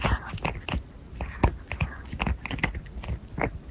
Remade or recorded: recorded